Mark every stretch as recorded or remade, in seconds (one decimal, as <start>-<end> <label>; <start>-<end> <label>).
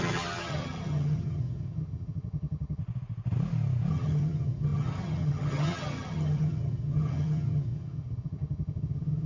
0.0-2.8 remade; 2.8-3.9 recorded; 3.9-9.3 remade